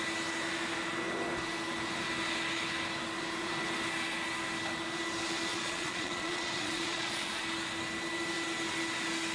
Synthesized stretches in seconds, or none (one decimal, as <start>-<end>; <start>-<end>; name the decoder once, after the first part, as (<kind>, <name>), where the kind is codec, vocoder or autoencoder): 5.5-7.4 (vocoder, Vocos)